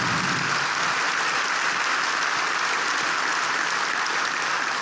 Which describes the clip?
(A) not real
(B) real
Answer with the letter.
B